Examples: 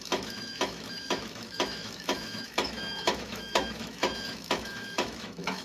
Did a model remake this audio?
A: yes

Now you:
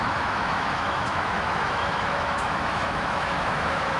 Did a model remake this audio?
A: yes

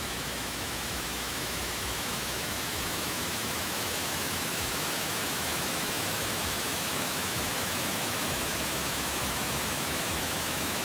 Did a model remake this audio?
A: yes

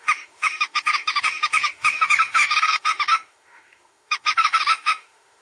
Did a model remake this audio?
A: yes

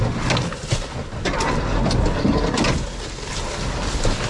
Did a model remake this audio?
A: no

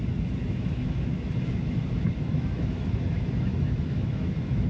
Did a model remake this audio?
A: yes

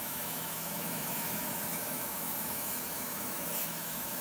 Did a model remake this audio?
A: yes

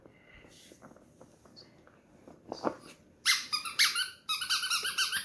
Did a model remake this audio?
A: no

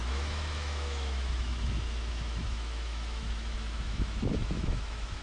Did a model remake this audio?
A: yes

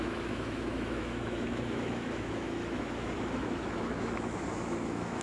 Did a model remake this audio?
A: yes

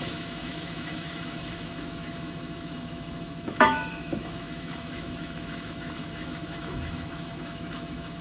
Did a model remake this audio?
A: yes